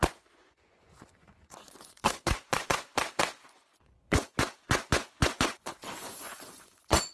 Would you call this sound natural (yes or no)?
no